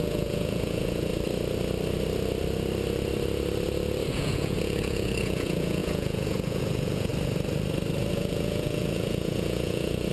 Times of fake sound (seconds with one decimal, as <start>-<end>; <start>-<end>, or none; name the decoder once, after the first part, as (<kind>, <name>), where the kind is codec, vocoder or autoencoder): 0.0-1.1 (vocoder, Vocos); 4.1-7.1; 8.1-10.1